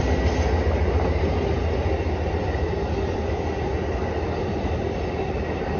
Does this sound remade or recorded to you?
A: recorded